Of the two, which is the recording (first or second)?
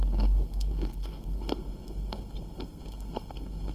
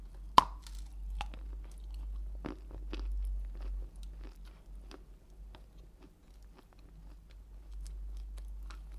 second